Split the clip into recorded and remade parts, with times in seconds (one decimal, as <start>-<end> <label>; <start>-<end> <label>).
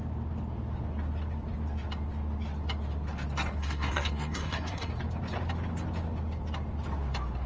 0.0-3.6 recorded; 3.6-4.9 remade; 4.9-7.5 recorded